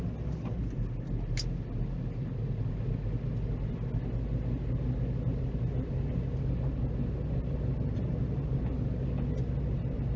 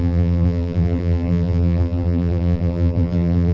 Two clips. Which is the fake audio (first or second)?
second